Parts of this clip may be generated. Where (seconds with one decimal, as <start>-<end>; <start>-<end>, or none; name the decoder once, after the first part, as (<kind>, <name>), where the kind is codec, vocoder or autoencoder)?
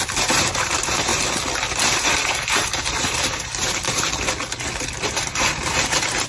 0.0-1.1 (vocoder, BigVGAN v2); 1.7-4.1; 5.0-6.3